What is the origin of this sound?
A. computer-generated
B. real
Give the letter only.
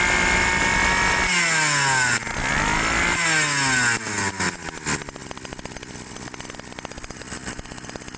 B